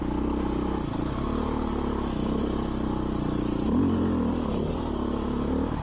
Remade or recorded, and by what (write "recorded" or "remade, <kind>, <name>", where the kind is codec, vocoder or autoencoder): recorded